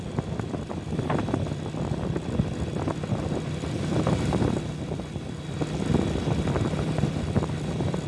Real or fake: real